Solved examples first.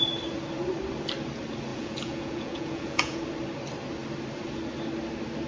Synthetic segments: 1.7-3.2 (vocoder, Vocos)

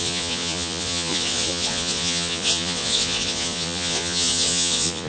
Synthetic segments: 0.0-5.1 (vocoder, Vocos)

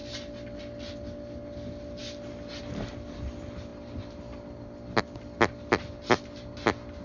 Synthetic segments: none

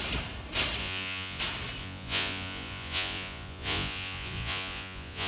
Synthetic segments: 0.8-1.4 (vocoder, Vocos); 1.8-5.3

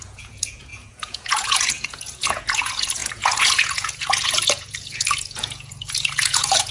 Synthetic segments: 0.0-6.7 (vocoder, Vocos)

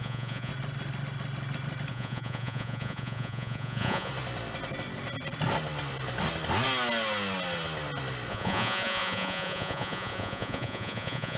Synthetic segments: 0.0-0.5 (vocoder, Vocos); 1.9-4.1; 8.3-11.4

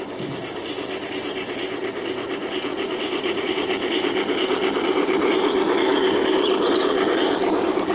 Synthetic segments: 2.7-3.5 (vocoder, Vocos)